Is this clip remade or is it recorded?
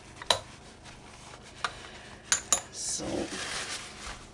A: recorded